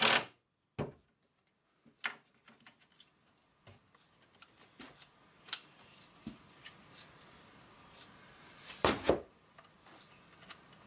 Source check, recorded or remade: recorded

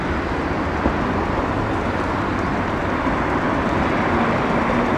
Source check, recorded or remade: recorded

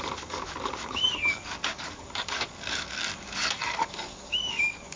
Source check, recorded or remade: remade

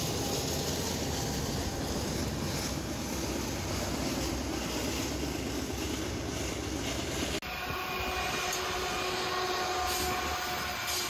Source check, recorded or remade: recorded